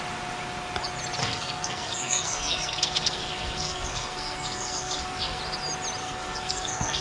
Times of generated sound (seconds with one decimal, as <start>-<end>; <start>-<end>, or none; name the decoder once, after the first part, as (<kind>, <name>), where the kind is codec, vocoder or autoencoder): 1.2-5.4 (codec, SNAC); 6.0-7.0